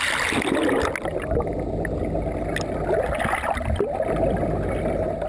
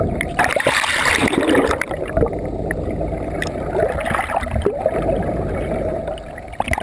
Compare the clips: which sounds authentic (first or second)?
first